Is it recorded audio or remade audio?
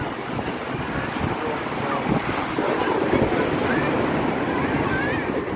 recorded